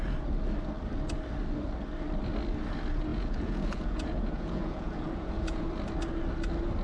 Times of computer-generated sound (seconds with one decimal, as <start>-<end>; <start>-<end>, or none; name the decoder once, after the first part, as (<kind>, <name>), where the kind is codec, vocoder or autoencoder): 3.1-5.6 (vocoder, Vocos)